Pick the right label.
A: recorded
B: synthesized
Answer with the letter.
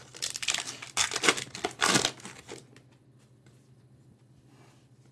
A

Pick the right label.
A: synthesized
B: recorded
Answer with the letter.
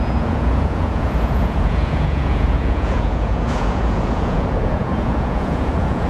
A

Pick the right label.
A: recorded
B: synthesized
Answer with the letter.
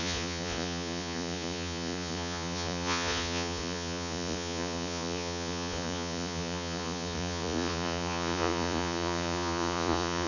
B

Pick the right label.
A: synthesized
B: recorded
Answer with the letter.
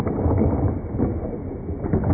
B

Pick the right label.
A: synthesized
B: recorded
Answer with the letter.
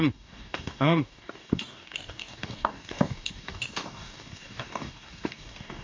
A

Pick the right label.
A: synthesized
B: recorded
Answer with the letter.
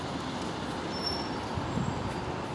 B